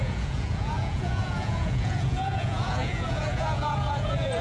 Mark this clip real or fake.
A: fake